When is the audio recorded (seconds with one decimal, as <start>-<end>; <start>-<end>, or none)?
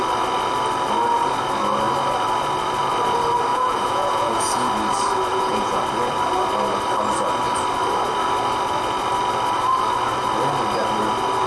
0.0-3.5; 4.7-5.3; 5.8-11.5